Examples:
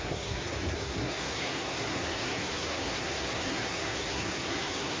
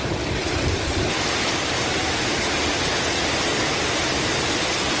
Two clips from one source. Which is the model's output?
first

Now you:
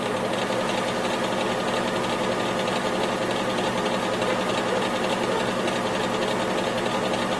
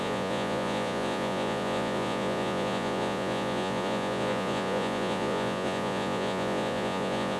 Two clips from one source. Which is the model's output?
second